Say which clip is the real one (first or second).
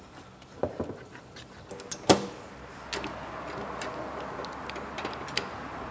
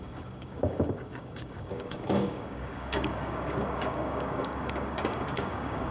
first